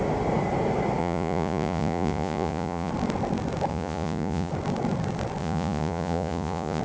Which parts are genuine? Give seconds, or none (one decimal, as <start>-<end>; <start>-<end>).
0.0-1.0; 2.9-3.7; 4.5-5.4